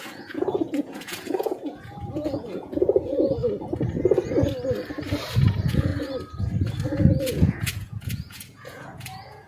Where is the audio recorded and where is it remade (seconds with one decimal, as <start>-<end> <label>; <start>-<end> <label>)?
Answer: 0.0-3.4 remade; 3.4-5.4 recorded; 5.4-5.9 remade; 5.9-7.2 recorded; 7.2-9.5 remade